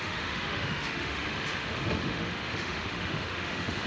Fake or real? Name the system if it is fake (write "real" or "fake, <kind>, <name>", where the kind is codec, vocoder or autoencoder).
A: fake, autoencoder, DAC-VAE